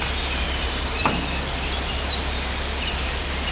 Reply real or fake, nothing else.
fake